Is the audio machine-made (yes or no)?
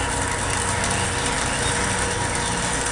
no